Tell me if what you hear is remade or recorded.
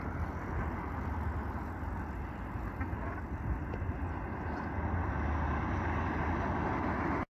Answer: recorded